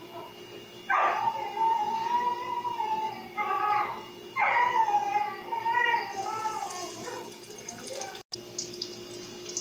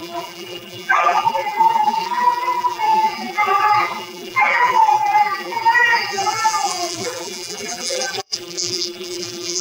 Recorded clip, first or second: first